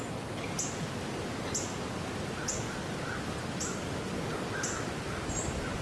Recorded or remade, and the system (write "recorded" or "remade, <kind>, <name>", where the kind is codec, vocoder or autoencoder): recorded